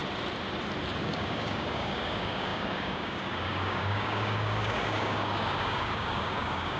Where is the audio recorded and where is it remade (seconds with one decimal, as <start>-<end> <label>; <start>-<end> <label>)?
0.0-1.0 recorded; 1.0-6.8 remade